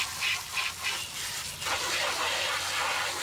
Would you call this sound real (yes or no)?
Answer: yes